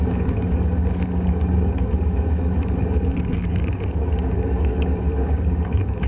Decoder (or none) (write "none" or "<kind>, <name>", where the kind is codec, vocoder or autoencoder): codec, DAC